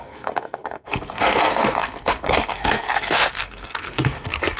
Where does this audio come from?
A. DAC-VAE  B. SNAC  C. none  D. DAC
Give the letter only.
B